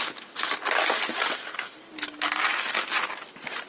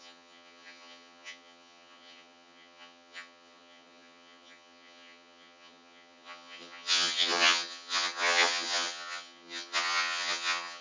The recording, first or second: first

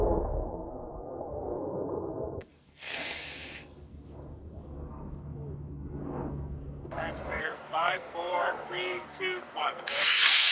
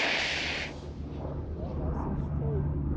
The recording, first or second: second